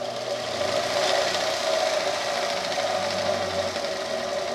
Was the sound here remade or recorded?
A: recorded